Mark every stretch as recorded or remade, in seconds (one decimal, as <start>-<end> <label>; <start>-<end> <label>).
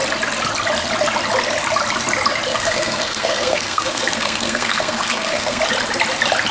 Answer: 0.0-2.5 recorded; 2.5-5.6 remade; 5.6-6.5 recorded